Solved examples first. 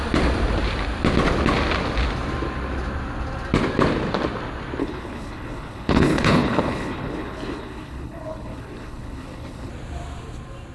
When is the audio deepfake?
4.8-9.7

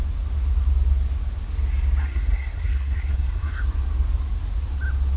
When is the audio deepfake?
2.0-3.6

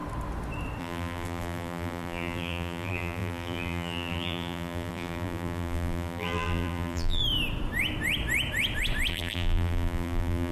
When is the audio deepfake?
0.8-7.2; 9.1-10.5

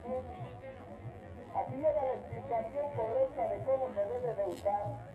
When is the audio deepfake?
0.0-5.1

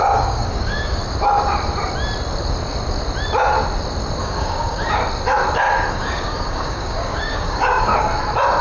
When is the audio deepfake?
0.0-1.0; 4.2-5.0; 5.9-7.9